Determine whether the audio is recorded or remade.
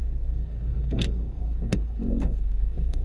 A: remade